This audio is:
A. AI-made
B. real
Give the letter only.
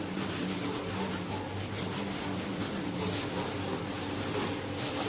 B